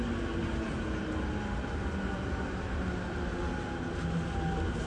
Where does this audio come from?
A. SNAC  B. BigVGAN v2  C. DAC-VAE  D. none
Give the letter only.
D